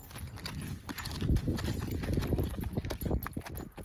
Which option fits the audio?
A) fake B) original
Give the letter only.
B